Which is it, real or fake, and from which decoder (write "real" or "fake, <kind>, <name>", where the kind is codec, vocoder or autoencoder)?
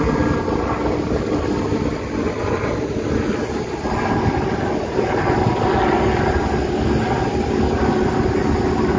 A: real